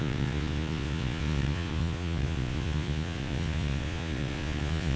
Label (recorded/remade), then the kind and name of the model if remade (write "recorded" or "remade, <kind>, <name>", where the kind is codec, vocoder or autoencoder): remade, vocoder, Vocos